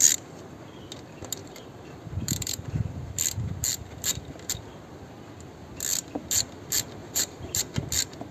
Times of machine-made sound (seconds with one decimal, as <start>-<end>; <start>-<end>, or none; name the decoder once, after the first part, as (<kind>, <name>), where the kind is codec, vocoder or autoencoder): 1.4-3.1 (vocoder, BigVGAN v2); 7.0-7.6